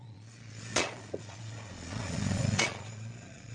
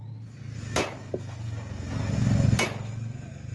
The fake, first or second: first